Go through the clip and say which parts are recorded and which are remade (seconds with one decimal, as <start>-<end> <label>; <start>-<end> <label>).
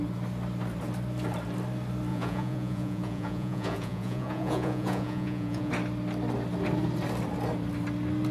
0.0-2.1 recorded; 2.1-5.7 remade; 5.7-8.3 recorded